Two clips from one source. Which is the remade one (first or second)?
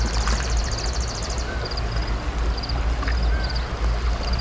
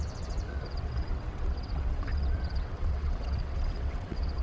second